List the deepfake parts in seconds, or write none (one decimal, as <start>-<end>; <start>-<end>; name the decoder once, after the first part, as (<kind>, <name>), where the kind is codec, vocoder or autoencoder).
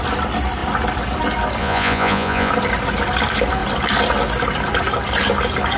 1.6-2.5 (vocoder, Vocos)